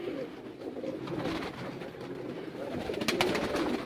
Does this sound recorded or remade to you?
recorded